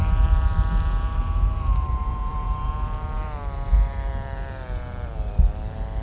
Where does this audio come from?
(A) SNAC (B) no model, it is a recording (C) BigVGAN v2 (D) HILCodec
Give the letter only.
C